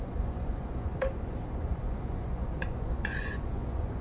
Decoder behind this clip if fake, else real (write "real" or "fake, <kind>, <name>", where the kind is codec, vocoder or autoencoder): fake, vocoder, Vocos